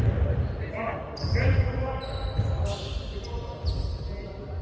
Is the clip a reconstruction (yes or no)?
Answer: no